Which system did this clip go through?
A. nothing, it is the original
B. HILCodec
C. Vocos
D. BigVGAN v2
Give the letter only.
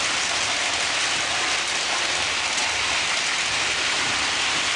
A